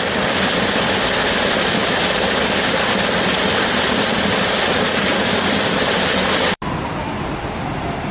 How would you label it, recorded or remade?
remade